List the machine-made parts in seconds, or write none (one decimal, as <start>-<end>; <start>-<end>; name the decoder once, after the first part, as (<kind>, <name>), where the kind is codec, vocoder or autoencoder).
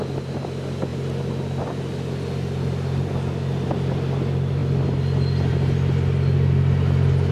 none